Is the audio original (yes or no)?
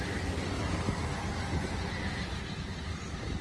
yes